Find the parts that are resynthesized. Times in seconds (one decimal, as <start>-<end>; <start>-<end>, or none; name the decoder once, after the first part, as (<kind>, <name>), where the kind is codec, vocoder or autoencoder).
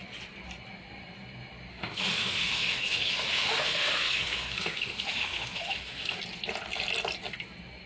1.7-6.2 (autoencoder, DAC-VAE)